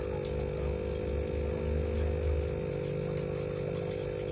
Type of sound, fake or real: real